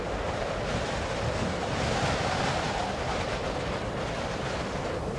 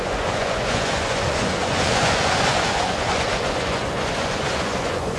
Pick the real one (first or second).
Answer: first